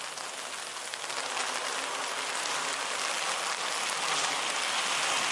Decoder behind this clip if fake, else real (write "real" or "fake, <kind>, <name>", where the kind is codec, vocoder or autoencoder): real